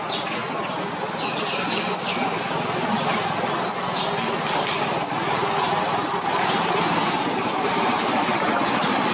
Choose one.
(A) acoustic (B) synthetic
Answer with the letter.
A